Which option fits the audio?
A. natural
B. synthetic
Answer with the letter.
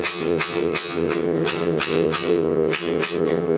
B